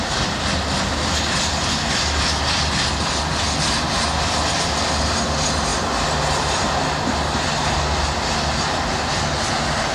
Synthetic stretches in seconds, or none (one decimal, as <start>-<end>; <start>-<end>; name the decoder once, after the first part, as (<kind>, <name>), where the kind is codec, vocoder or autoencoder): none